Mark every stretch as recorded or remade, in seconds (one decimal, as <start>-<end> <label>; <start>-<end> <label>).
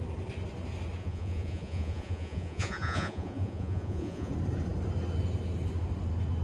0.0-1.0 recorded; 1.0-4.3 remade; 4.3-6.4 recorded